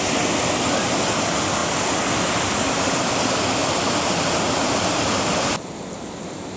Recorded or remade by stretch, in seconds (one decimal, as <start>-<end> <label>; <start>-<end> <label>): 0.0-6.6 recorded

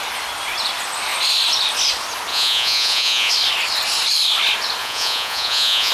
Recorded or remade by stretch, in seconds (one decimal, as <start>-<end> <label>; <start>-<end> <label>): 0.0-2.3 recorded; 2.3-3.3 remade; 3.3-4.8 recorded; 4.8-5.9 remade

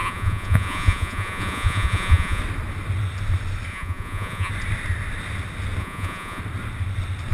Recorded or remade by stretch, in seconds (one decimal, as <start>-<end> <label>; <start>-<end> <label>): 0.0-2.4 remade; 2.4-3.7 recorded; 3.7-4.5 remade; 4.5-5.8 recorded; 5.8-6.4 remade; 6.4-7.3 recorded

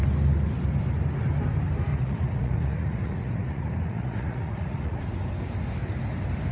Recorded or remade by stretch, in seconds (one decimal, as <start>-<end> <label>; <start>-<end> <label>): 0.0-1.9 recorded; 1.9-5.0 remade; 5.0-6.5 recorded

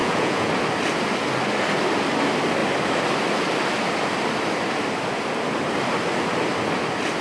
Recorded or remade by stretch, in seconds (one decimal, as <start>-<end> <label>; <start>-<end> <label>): 0.0-0.5 remade; 0.5-7.2 recorded

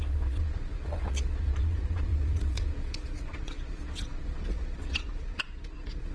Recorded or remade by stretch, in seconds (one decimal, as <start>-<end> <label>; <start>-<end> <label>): 0.0-6.1 remade